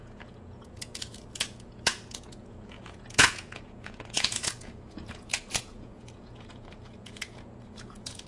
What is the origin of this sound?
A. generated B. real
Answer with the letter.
A